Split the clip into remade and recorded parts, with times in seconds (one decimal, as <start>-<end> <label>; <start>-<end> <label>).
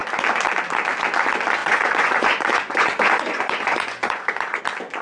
0.0-1.6 recorded; 1.6-4.6 remade; 4.6-5.0 recorded